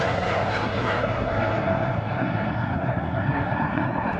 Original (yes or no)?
no